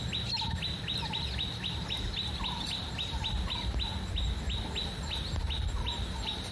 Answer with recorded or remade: recorded